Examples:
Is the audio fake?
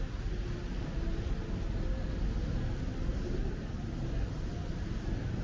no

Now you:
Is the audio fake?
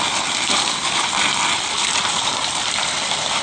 yes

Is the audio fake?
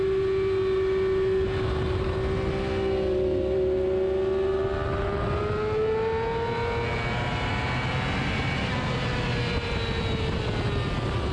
no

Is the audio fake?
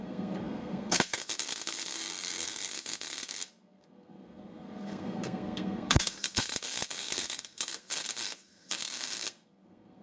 yes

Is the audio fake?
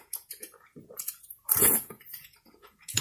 yes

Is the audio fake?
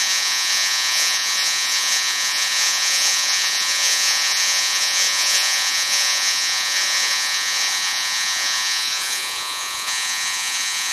yes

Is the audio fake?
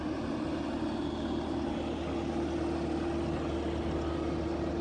no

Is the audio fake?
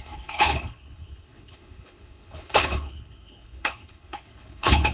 yes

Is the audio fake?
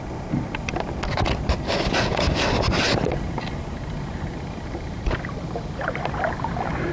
no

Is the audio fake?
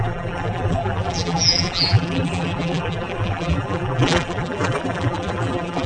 yes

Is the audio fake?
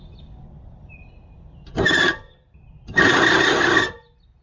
no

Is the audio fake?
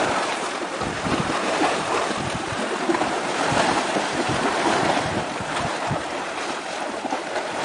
yes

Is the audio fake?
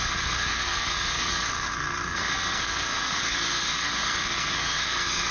yes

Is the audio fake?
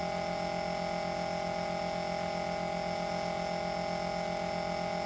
no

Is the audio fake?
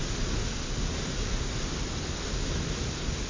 no